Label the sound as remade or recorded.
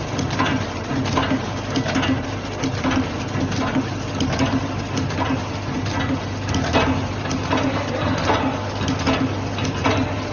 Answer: recorded